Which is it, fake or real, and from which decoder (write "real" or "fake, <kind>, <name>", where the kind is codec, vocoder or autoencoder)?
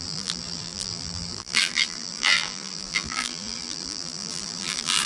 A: fake, vocoder, BigVGAN v2